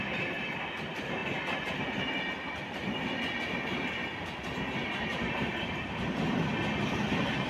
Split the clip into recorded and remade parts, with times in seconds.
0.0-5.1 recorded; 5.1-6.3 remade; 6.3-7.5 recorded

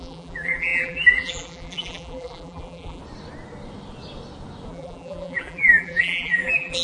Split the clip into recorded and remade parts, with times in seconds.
0.0-3.0 remade; 3.0-4.7 recorded; 4.7-6.8 remade

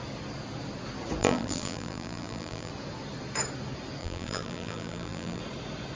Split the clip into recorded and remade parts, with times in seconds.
0.0-1.2 recorded; 1.2-2.7 remade; 2.7-4.0 recorded; 4.0-5.4 remade; 5.4-6.0 recorded